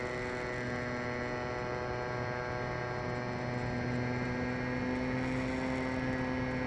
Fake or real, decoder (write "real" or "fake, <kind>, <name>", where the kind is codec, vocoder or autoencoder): real